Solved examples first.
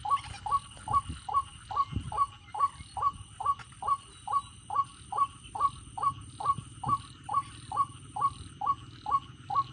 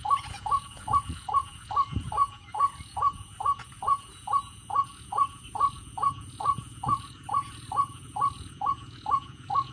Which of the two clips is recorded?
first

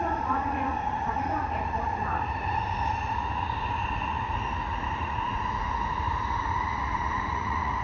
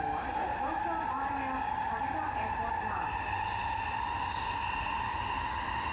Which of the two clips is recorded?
second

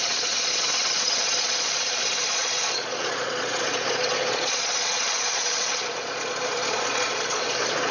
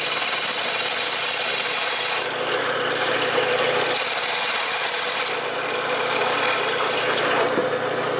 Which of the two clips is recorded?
second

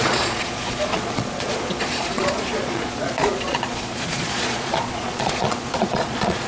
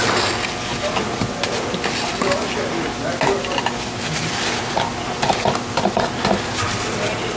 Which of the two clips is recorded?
second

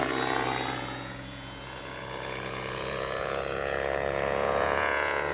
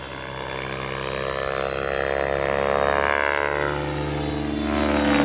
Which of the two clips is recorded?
second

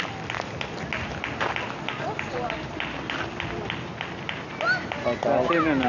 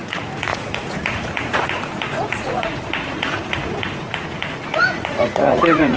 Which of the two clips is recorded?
first